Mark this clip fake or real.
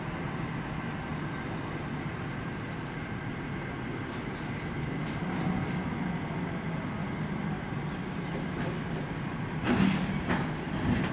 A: fake